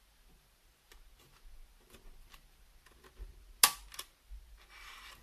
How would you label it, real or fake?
real